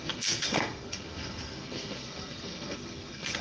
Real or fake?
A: fake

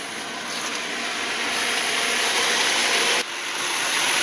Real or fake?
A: real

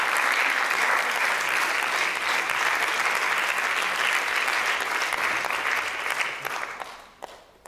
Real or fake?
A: real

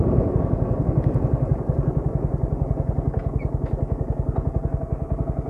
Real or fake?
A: real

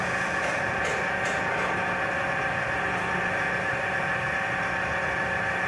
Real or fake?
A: real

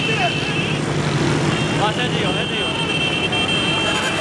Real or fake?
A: real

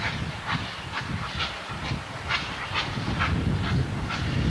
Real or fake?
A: real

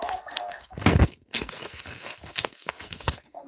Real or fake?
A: fake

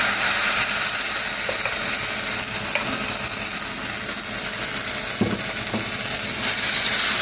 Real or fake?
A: real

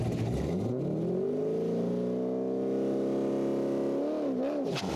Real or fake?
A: real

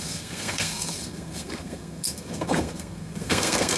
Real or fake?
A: fake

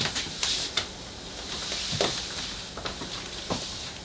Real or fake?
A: real